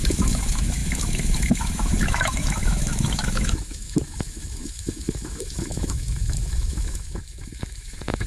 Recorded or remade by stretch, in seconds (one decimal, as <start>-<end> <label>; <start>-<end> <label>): 0.0-8.3 remade